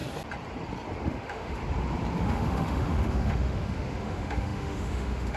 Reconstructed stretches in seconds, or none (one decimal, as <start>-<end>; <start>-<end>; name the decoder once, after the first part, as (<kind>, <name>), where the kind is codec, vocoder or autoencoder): 1.0-1.6 (autoencoder, DAC-VAE); 2.2-5.4